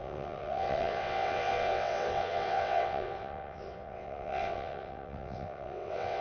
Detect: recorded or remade remade